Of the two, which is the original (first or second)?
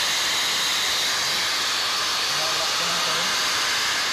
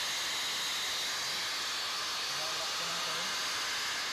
second